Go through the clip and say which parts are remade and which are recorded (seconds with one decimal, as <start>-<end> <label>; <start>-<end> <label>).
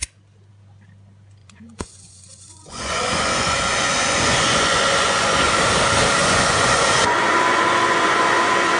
0.0-1.4 recorded; 1.4-5.5 remade; 5.5-6.2 recorded; 6.2-8.8 remade